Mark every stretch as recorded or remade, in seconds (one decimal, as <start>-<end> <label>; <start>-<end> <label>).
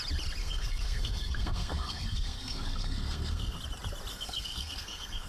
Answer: 0.0-0.4 recorded; 0.4-3.6 remade; 3.6-4.1 recorded; 4.1-5.3 remade